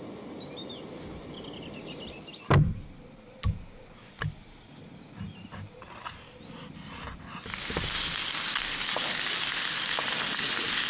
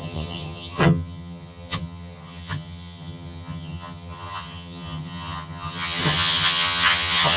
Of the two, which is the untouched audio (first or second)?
first